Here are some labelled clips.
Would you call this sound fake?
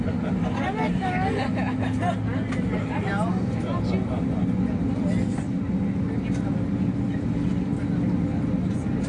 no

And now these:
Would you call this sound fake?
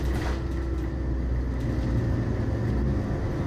no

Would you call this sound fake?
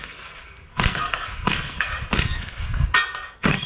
yes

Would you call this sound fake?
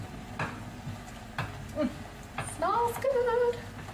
no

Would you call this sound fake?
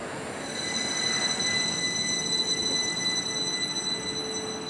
no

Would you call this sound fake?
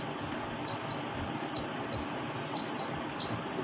no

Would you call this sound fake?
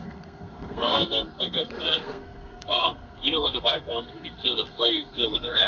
yes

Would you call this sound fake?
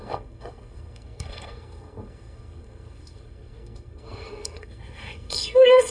yes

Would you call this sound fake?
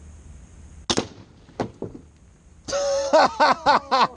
no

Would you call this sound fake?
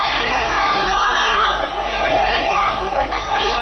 yes